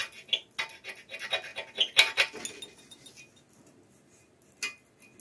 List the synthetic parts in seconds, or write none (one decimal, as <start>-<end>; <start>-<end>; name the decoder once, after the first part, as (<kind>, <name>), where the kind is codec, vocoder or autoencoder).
none